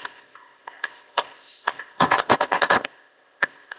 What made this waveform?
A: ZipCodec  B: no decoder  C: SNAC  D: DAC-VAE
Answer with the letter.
A